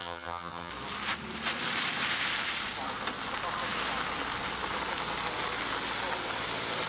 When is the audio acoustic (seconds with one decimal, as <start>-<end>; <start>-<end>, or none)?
0.7-6.9